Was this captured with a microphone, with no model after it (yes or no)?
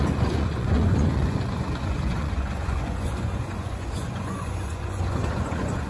no